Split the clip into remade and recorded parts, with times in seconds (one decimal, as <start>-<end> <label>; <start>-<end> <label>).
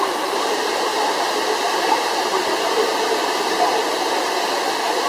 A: 0.0-5.1 remade